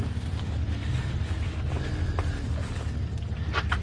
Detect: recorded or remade recorded